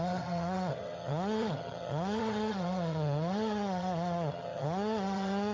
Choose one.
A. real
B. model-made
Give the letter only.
B